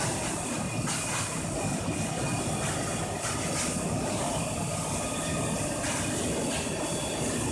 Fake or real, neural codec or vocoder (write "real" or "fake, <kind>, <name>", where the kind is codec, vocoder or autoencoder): real